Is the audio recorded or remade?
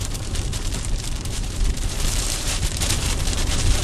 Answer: remade